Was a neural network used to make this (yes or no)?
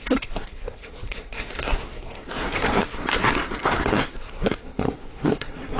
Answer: yes